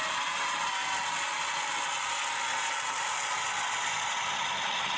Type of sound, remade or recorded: recorded